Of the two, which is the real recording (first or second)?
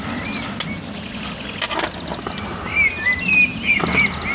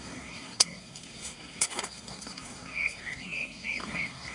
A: first